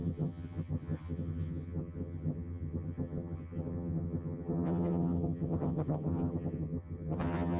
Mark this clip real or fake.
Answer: fake